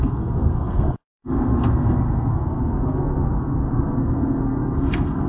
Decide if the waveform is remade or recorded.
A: remade